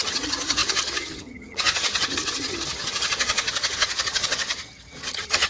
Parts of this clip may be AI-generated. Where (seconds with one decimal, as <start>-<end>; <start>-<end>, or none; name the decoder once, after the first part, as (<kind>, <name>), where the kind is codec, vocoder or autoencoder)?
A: 0.0-5.5 (vocoder, HiFi-GAN)